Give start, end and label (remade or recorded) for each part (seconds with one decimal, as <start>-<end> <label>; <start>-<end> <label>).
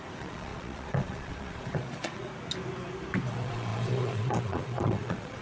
0.0-2.3 remade; 2.3-3.3 recorded; 3.3-5.4 remade